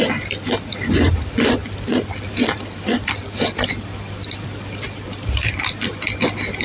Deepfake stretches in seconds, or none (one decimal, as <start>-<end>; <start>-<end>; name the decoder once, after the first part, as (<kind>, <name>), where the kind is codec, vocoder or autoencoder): 0.7-1.2 (vocoder, BigVGAN v2); 1.6-5.6